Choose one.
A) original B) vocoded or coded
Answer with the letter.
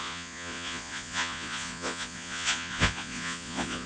B